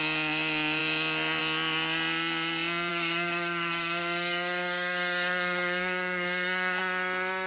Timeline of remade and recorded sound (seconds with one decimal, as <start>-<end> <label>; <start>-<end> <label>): 0.0-2.9 recorded; 2.9-6.8 remade; 6.8-7.5 recorded